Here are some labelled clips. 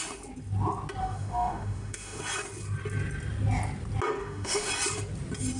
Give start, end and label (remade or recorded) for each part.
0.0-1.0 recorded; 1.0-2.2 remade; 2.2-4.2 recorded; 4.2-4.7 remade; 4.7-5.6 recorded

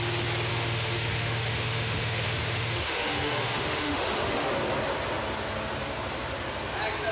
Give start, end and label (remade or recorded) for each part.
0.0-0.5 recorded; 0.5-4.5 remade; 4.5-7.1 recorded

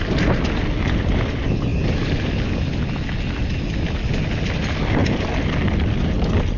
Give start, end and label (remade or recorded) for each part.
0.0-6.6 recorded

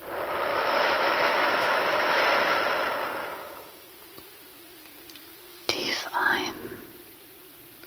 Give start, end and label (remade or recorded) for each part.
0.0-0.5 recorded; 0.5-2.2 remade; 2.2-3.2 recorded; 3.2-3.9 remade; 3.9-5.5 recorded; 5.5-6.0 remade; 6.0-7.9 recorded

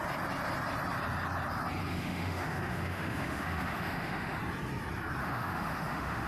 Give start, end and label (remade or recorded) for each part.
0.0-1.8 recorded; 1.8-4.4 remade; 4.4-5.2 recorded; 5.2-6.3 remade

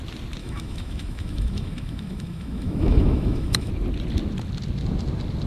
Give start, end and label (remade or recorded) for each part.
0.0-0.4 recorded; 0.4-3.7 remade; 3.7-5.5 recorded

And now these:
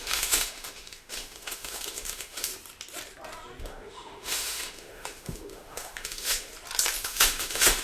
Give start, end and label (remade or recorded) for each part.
0.0-2.5 remade; 2.5-3.6 recorded; 3.6-6.5 remade; 6.5-7.0 recorded; 7.0-7.8 remade